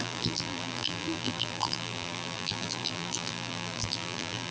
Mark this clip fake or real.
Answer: fake